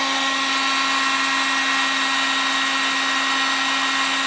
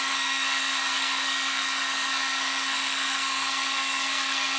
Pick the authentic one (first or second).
first